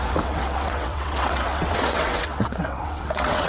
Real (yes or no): no